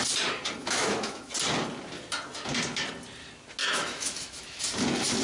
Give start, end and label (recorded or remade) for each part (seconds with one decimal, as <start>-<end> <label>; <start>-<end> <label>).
0.0-0.6 recorded; 0.6-1.3 remade; 1.3-3.6 recorded; 3.6-4.6 remade; 4.6-5.2 recorded